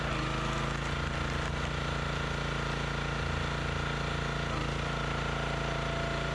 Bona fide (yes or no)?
yes